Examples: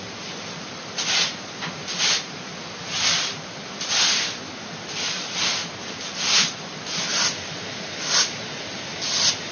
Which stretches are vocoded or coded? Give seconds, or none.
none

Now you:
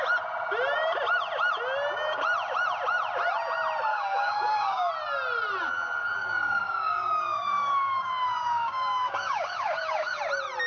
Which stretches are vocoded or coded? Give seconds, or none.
3.9-4.9 (codec, DAC); 6.2-10.2

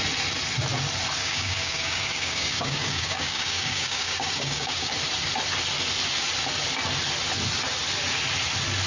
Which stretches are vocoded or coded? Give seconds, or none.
1.2-4.9 (codec, DAC)

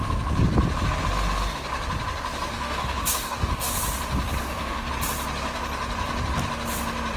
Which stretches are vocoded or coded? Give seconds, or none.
2.5-3.7 (codec, DAC); 4.4-4.9

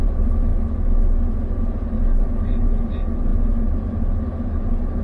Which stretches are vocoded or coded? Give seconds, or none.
none

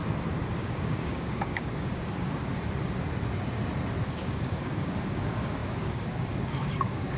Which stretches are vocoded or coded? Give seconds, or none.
0.6-2.4 (codec, DAC); 4.0-7.2